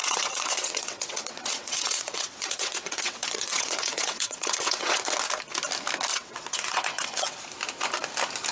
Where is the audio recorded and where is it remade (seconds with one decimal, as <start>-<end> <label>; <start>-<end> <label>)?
0.0-5.0 remade; 5.0-6.1 recorded; 6.1-7.4 remade; 7.4-8.5 recorded